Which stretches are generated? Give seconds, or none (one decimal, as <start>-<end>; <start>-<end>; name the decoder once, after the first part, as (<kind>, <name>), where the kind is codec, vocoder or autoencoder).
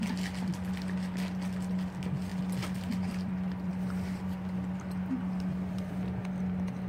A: none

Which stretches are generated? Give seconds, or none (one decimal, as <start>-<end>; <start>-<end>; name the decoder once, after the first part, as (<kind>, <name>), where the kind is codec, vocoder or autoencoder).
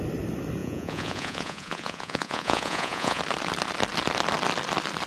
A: 0.6-3.2 (vocoder, Vocos)